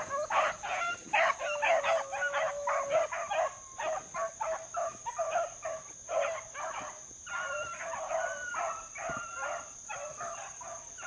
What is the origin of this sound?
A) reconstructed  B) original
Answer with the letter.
B